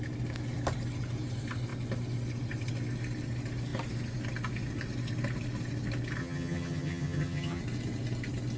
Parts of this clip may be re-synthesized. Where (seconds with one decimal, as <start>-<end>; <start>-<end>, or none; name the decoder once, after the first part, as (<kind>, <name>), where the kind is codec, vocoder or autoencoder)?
6.2-7.6 (vocoder, HiFi-GAN)